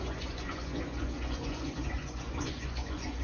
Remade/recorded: remade